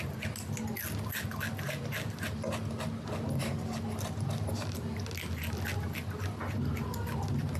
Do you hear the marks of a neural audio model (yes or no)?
no